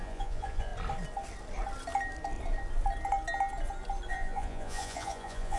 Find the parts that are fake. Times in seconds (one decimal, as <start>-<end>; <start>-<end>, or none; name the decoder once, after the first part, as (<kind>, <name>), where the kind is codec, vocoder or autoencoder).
0.0-0.7 (vocoder, Vocos); 4.1-5.6